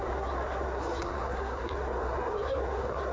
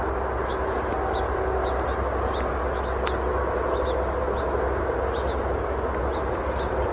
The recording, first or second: second